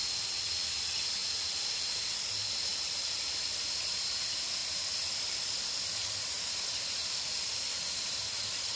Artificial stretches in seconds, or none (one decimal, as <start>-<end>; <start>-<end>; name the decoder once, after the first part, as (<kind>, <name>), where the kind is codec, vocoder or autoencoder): 1.2-2.1 (vocoder, BigVGAN v2); 2.7-3.4; 7.0-7.6